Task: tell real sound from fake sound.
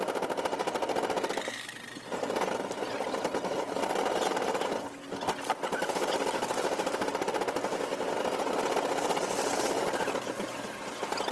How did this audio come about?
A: real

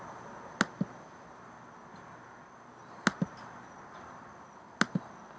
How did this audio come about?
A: real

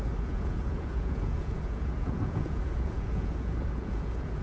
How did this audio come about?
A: fake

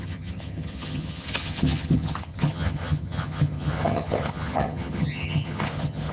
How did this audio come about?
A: fake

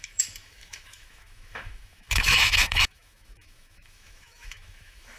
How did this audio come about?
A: fake